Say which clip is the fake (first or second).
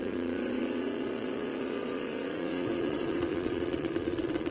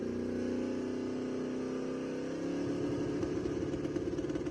first